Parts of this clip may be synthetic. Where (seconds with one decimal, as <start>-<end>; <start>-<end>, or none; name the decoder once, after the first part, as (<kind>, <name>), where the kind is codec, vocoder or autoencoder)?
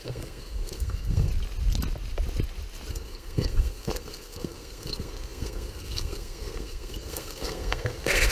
0.0-1.3 (codec, SNAC); 2.9-8.3